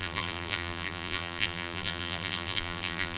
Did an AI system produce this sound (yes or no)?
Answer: yes